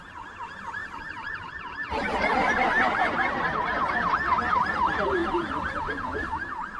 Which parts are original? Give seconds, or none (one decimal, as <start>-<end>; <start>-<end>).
0.0-0.8; 3.1-5.2; 5.8-6.8